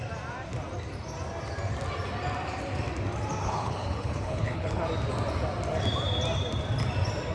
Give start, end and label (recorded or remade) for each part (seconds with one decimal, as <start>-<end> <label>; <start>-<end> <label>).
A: 0.0-3.4 recorded; 3.4-4.8 remade; 4.8-7.3 recorded

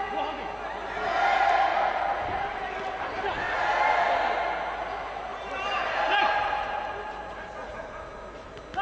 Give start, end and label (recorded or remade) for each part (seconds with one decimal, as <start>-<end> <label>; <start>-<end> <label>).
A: 0.0-1.7 recorded; 1.7-3.2 remade; 3.2-5.3 recorded; 5.3-8.0 remade; 8.0-8.8 recorded

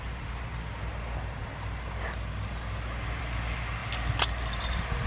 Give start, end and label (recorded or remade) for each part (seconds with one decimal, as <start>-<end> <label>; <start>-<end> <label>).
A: 0.0-5.1 recorded

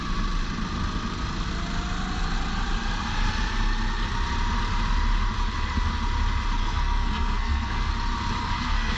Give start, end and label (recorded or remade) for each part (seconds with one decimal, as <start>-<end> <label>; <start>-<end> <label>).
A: 0.0-6.6 recorded; 6.6-7.9 remade; 7.9-8.4 recorded; 8.4-9.0 remade

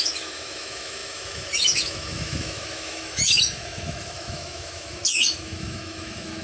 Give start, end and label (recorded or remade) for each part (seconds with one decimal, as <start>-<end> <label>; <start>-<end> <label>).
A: 0.0-6.4 remade